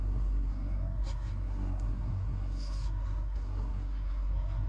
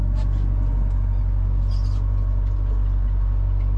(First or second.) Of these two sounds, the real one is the second